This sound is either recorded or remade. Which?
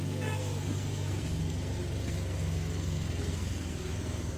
remade